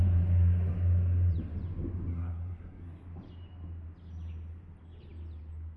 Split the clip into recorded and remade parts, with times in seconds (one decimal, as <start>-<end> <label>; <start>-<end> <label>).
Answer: 0.0-2.1 recorded; 2.1-2.9 remade; 2.9-5.8 recorded